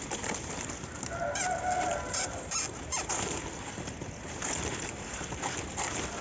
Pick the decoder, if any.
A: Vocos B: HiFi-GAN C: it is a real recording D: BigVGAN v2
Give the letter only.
C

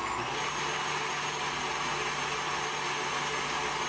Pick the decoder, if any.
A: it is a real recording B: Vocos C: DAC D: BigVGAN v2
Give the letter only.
A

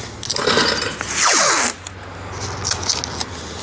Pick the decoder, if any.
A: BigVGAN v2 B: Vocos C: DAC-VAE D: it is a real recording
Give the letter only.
D